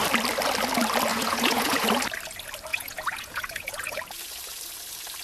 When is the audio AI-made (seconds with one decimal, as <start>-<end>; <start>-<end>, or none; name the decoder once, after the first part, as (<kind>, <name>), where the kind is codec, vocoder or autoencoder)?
1.1-1.9 (vocoder, Vocos); 2.7-4.0